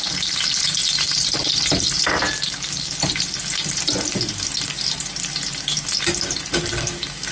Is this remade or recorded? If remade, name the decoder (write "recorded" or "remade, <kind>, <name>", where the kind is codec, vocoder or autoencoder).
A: recorded